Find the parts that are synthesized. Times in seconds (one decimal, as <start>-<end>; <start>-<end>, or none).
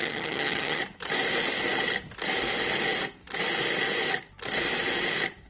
0.0-0.8